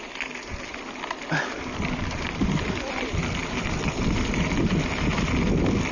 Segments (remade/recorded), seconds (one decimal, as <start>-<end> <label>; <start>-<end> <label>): 0.0-0.7 recorded; 0.7-4.2 remade; 4.2-5.9 recorded